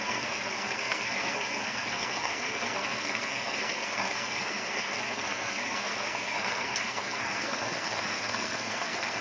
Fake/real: fake